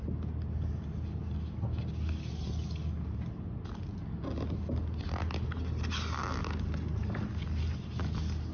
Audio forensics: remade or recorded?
recorded